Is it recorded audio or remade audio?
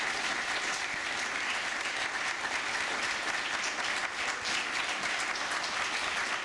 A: recorded